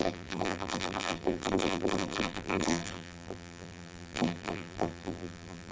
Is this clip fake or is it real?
fake